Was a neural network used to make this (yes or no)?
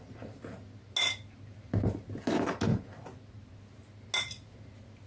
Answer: no